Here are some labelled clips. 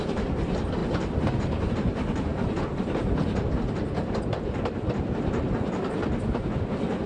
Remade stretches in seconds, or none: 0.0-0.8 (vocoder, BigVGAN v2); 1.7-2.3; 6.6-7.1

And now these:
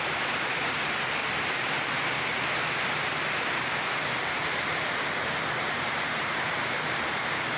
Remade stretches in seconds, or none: 0.0-1.2 (vocoder, BigVGAN v2); 5.2-7.6